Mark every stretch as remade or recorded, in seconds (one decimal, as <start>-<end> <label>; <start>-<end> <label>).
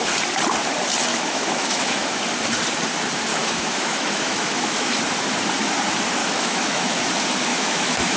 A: 0.0-1.1 recorded; 1.1-2.2 remade; 2.2-3.3 recorded; 3.3-5.0 remade; 5.0-6.2 recorded; 6.2-7.0 remade; 7.0-7.5 recorded; 7.5-8.2 remade